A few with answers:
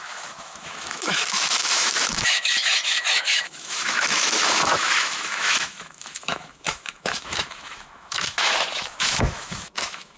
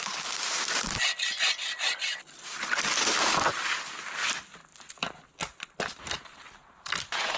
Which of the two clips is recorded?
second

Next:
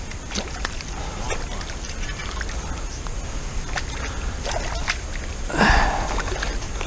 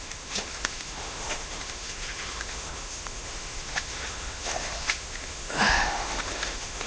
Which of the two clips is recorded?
first